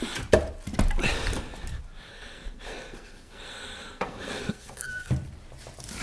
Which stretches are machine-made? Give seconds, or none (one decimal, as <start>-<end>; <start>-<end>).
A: 2.1-5.1